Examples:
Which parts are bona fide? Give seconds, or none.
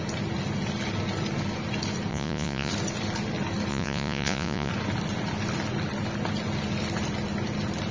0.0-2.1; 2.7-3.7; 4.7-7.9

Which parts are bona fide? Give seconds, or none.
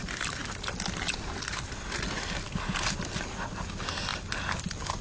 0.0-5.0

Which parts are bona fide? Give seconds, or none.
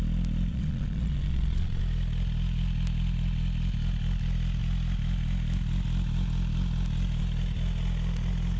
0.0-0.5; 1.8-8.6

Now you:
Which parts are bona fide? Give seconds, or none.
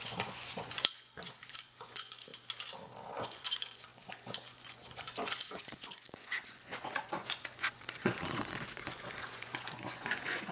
2.3-3.2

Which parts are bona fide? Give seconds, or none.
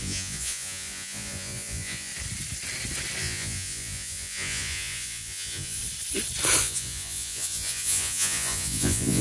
2.1-3.2; 5.8-6.6